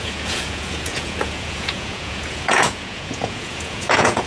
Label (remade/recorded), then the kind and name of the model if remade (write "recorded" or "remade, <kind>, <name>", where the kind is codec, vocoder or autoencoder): remade, vocoder, Vocos